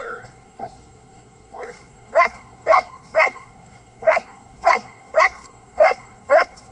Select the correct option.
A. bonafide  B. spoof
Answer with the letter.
B